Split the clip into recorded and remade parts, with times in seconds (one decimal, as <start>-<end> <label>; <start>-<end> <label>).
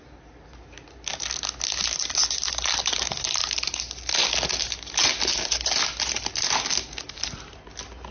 0.0-8.1 recorded